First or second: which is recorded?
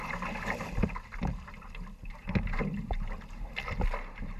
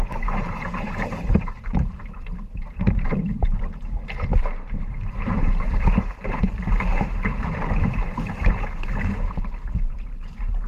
first